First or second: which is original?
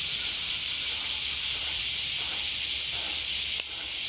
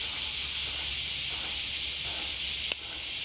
second